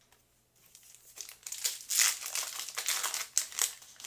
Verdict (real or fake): real